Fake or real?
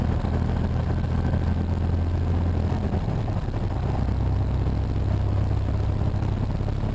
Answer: real